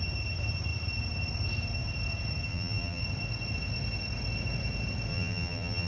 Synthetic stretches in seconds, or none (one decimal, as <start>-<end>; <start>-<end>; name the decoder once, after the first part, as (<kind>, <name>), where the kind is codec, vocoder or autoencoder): 2.5-3.0 (vocoder, BigVGAN v2); 5.1-5.9